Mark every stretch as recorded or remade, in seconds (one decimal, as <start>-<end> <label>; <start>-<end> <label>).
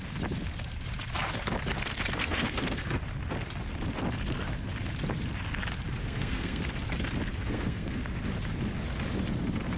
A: 0.0-2.2 recorded; 2.2-3.0 remade; 3.0-6.0 recorded; 6.0-6.6 remade; 6.6-7.3 recorded; 7.3-8.0 remade; 8.0-9.8 recorded